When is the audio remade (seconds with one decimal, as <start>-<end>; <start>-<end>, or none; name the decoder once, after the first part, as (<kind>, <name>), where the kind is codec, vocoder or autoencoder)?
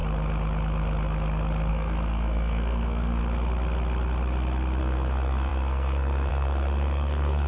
1.7-3.2 (codec, SNAC); 4.8-7.5